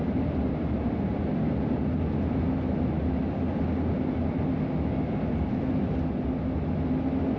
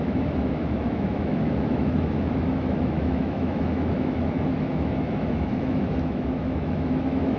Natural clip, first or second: first